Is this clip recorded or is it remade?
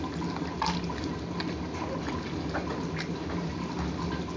recorded